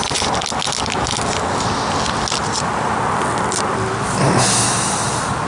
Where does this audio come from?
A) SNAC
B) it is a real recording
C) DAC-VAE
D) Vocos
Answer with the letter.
B